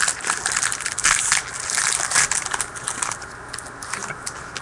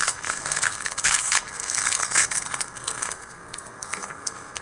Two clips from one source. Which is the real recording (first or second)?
first